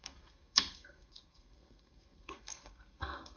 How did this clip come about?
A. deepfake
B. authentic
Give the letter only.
A